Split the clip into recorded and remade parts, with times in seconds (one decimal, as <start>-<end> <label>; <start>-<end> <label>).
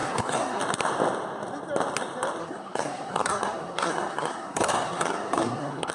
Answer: 0.0-0.6 remade; 0.6-2.4 recorded; 2.4-5.9 remade